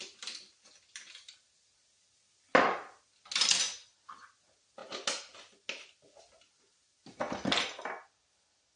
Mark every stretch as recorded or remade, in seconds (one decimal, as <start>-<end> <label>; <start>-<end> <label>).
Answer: 0.0-8.8 recorded